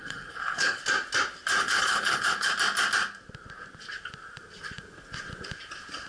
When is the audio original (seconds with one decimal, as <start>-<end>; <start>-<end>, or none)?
0.8-1.6; 2.5-6.1